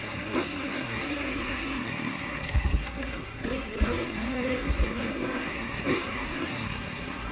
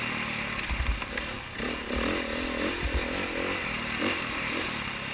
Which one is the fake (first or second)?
first